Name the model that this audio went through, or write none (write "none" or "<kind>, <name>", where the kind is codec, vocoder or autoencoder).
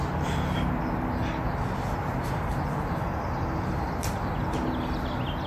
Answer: none